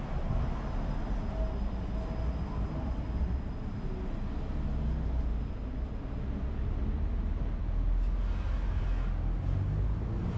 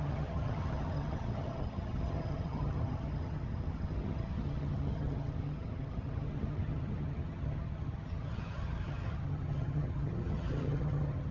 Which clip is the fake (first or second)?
second